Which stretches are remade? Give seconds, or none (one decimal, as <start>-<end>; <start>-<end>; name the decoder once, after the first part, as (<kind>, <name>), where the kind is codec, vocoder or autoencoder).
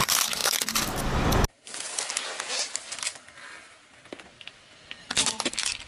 none